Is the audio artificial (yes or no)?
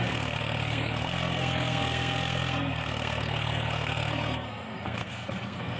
yes